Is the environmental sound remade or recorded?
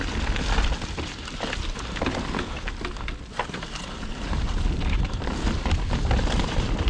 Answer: recorded